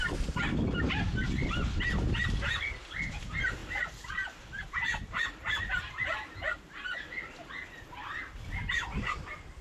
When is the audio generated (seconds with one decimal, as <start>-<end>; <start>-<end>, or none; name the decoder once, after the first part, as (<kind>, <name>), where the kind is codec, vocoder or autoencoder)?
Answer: none